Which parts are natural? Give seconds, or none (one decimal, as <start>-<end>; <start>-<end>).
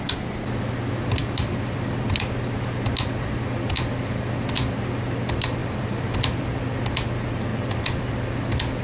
0.0-1.2; 1.8-5.6; 6.5-7.5; 8.3-8.8